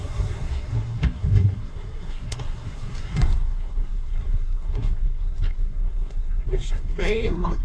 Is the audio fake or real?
fake